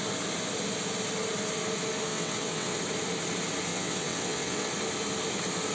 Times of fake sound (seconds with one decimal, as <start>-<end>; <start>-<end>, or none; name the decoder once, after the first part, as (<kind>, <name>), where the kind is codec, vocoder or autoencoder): 2.1-2.8 (vocoder, WaveNeXt); 3.7-4.7